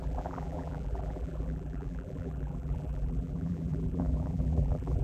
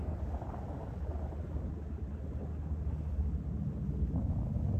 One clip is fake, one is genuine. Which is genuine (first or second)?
second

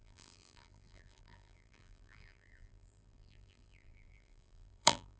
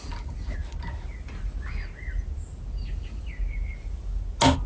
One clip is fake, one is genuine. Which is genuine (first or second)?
second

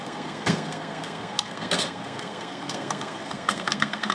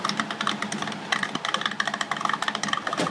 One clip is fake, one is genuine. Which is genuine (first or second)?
second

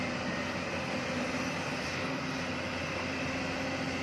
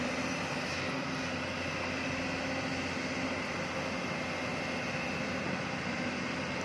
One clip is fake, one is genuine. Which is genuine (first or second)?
second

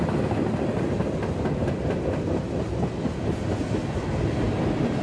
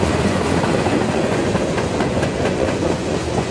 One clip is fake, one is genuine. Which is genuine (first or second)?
first